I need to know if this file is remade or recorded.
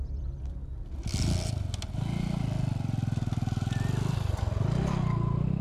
recorded